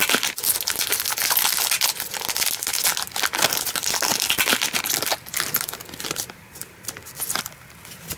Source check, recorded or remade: recorded